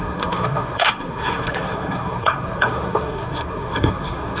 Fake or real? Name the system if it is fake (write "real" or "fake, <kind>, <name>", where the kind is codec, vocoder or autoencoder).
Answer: fake, codec, SNAC